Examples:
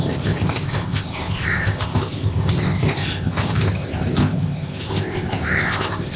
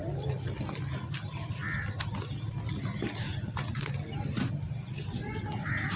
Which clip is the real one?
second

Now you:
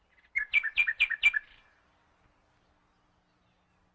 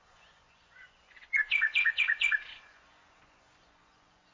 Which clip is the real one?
first